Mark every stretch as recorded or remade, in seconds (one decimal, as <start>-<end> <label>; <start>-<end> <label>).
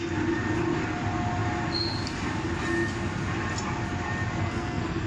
0.0-4.4 recorded; 4.4-5.1 remade